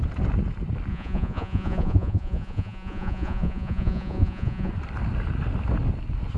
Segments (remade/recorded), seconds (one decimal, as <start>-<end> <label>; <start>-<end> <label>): 0.0-0.9 recorded; 0.9-4.7 remade; 4.7-6.4 recorded